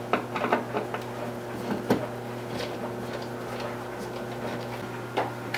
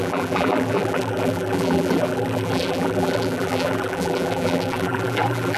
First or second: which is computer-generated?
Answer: second